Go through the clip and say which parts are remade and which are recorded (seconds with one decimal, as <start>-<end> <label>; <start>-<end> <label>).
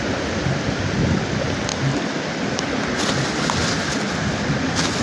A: 0.0-5.0 recorded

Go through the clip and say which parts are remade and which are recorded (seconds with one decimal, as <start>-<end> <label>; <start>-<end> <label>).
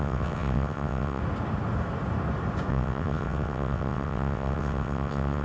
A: 0.0-1.2 remade; 1.2-2.7 recorded; 2.7-5.4 remade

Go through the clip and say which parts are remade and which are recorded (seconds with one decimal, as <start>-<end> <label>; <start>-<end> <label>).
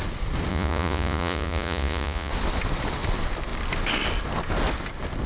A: 0.0-0.5 recorded; 0.5-2.3 remade; 2.3-5.3 recorded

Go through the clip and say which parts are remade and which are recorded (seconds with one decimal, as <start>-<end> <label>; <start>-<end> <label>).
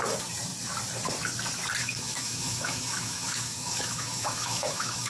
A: 0.0-1.8 recorded; 1.8-5.1 remade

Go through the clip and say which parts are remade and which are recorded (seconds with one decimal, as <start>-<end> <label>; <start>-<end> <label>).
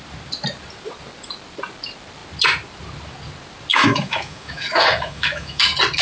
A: 0.0-3.7 recorded; 3.7-5.6 remade; 5.6-6.0 recorded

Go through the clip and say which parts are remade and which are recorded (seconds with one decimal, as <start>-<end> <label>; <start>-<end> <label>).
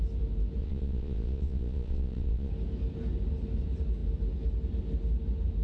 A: 0.0-0.6 recorded; 0.6-2.5 remade; 2.5-5.6 recorded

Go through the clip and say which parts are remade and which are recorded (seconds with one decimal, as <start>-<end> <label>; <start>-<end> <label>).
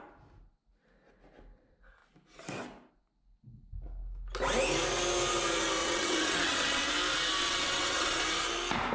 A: 0.0-5.8 recorded; 5.8-6.9 remade; 6.9-7.4 recorded; 7.4-8.2 remade; 8.2-8.9 recorded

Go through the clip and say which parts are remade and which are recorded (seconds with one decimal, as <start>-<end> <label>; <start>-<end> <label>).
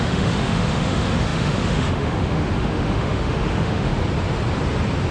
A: 0.0-3.9 remade; 3.9-5.1 recorded